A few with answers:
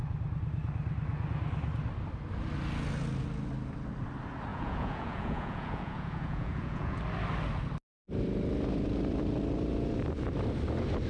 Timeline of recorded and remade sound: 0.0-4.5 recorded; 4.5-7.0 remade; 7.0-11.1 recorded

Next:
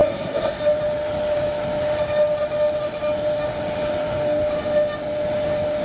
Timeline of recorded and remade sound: 0.0-0.6 remade; 0.6-5.8 recorded